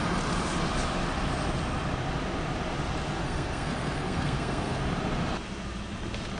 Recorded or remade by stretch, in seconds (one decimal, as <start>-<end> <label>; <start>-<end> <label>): 0.0-3.2 recorded; 3.2-4.8 remade; 4.8-6.4 recorded